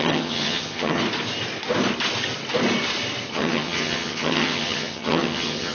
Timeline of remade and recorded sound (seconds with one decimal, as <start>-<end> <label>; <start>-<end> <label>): 0.0-1.0 remade; 1.0-3.3 recorded; 3.3-5.7 remade